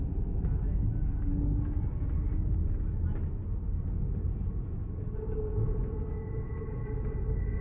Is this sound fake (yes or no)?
no